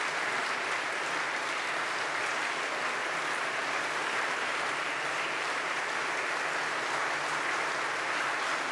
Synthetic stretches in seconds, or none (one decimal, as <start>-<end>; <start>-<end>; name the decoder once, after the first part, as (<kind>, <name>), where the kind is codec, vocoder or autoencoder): 4.0-5.8 (vocoder, BigVGAN v2)